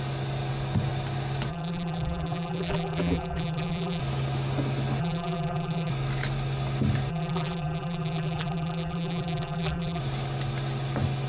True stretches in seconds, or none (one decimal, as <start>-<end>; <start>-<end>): 0.0-1.5; 4.0-5.0; 5.9-7.1; 10.0-11.3